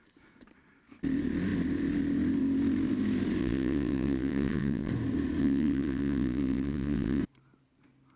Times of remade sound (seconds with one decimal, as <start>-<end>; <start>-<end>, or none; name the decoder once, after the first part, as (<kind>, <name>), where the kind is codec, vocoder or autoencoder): 3.4-4.9 (vocoder, WaveNeXt); 5.4-7.2